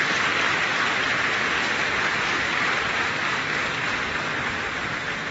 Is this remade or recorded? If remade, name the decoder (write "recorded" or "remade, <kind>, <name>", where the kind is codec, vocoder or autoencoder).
recorded